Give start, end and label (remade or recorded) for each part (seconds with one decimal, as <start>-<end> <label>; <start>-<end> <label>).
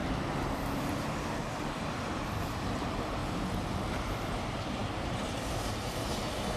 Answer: 0.0-3.2 remade; 3.2-3.9 recorded; 3.9-6.6 remade